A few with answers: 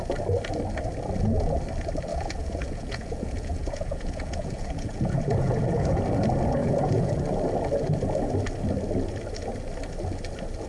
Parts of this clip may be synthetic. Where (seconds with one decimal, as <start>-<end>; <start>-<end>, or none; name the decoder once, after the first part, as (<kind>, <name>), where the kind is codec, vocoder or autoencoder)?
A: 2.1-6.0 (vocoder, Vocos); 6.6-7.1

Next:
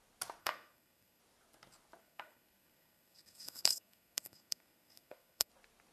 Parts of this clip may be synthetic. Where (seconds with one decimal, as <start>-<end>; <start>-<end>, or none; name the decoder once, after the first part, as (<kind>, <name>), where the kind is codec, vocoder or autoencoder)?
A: 0.4-1.2 (codec, SNAC); 2.0-5.5

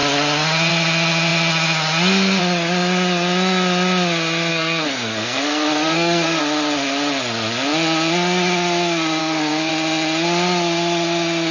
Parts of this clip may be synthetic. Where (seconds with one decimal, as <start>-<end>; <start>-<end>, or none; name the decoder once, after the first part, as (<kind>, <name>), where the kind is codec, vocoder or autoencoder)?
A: 4.5-6.4 (codec, SNAC); 9.2-9.7

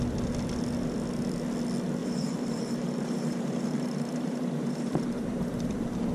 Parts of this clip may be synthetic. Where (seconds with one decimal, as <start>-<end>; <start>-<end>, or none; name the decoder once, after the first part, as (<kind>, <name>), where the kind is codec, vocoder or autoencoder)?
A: 2.0-6.1 (vocoder, BigVGAN v2)

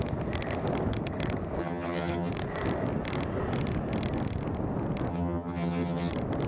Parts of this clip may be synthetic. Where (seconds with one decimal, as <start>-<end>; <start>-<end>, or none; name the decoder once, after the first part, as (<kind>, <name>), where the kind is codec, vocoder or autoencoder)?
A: 1.6-2.3 (vocoder, HiFi-GAN); 5.1-6.1